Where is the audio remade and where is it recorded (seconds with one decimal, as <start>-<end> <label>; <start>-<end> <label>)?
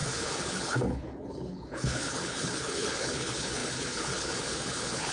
0.0-5.1 remade